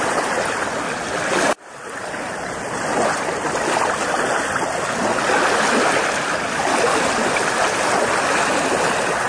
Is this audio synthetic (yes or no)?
no